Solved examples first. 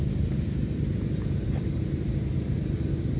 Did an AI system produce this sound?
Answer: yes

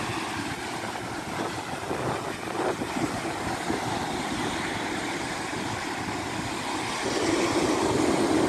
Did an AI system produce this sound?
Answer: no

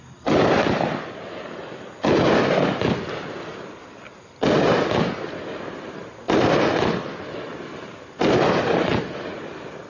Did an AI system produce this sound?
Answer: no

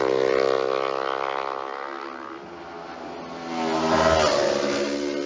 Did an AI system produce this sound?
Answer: no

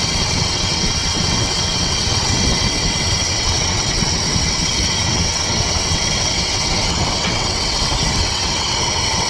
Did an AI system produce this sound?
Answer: yes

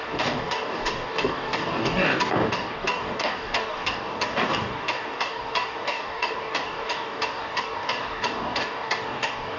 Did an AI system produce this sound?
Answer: yes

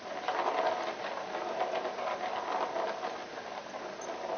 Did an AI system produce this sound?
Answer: no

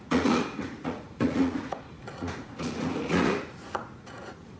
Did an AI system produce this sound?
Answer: yes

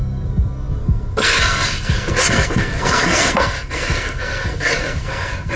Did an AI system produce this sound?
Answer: yes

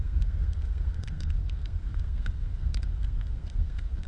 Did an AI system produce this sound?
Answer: yes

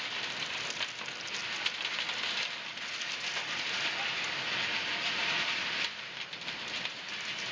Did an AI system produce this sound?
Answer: no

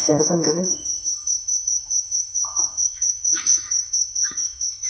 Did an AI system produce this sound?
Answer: yes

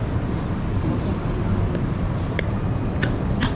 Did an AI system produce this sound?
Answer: no